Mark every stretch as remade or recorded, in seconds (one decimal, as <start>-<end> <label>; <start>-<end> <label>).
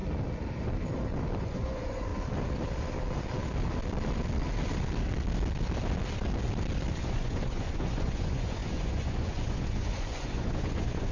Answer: 0.0-1.4 recorded; 1.4-2.1 remade; 2.1-7.0 recorded; 7.0-11.1 remade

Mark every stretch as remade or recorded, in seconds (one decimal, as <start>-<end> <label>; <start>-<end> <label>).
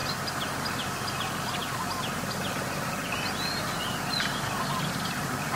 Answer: 0.0-5.6 recorded